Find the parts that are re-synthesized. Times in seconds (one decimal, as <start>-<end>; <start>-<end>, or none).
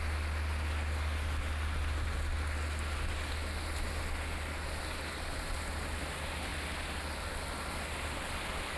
none